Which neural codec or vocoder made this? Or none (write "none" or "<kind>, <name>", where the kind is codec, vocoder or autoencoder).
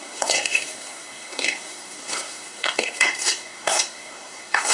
codec, SNAC